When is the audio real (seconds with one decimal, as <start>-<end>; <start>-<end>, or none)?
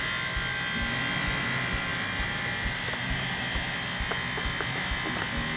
0.0-5.6